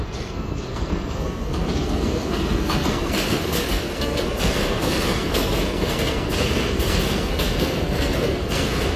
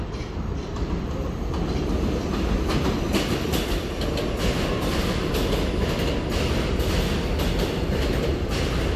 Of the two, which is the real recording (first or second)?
second